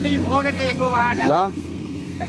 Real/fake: fake